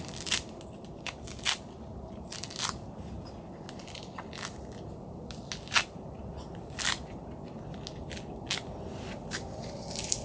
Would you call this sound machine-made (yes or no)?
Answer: no